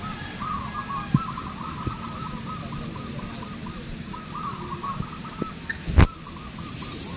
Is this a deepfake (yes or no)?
no